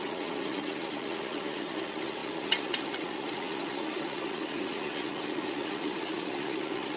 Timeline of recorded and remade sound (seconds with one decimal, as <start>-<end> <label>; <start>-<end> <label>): 0.0-7.0 remade